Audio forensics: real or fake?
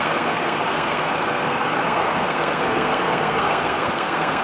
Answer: fake